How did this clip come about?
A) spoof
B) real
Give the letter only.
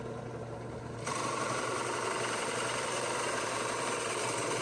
A